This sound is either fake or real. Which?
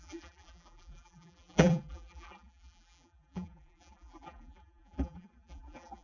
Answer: fake